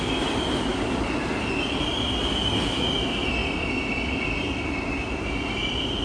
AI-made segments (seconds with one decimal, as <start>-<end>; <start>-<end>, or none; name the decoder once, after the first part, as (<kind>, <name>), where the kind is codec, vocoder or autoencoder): none